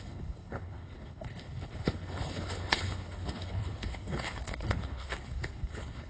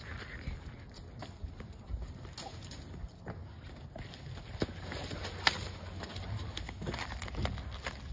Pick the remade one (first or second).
first